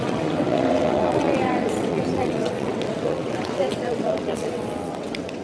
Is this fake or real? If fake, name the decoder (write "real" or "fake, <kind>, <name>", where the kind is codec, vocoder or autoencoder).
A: fake, vocoder, WaveNeXt